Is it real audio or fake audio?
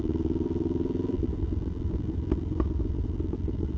fake